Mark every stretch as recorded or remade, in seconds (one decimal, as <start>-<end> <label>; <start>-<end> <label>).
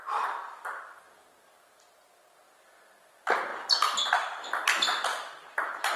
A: 0.0-6.0 recorded